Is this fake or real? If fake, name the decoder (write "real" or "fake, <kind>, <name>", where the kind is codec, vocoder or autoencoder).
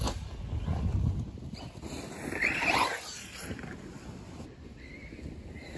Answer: real